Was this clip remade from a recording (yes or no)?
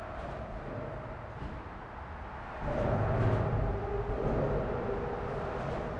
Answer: no